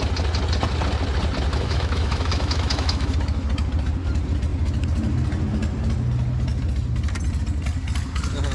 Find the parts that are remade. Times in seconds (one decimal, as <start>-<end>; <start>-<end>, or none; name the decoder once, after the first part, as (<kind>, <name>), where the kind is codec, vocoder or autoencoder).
1.5-3.1 (autoencoder, DAC-VAE)